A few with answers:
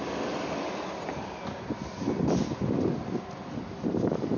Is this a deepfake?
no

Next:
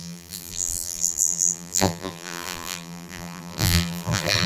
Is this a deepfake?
yes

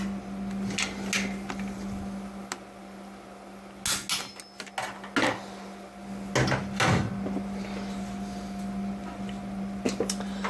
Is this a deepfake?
no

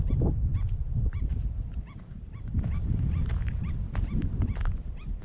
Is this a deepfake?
yes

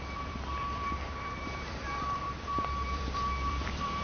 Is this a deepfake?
yes